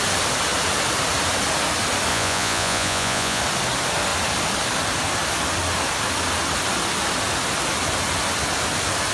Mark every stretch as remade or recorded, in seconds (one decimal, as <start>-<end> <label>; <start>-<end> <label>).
0.0-2.1 recorded; 2.1-3.4 remade; 3.4-9.1 recorded